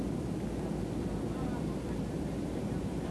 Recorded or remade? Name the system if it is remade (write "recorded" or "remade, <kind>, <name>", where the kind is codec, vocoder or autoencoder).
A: recorded